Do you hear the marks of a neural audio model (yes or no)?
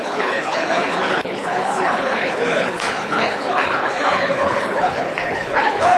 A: yes